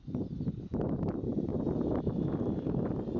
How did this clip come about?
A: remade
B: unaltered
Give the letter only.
B